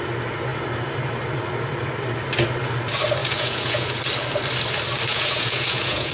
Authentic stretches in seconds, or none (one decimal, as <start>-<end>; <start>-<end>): 0.0-3.2; 4.0-5.1